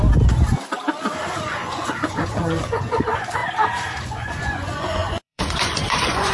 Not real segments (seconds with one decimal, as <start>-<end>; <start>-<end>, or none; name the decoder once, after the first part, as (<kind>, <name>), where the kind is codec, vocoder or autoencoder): 1.3-3.4 (vocoder, Vocos); 4.0-6.3